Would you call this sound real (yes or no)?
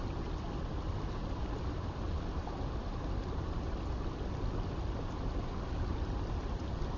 yes